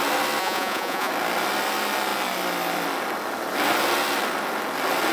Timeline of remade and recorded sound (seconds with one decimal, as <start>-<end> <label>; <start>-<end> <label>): 0.0-0.4 recorded; 0.4-1.1 remade; 1.1-5.1 recorded